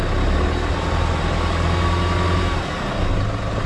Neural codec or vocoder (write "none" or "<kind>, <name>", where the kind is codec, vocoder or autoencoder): none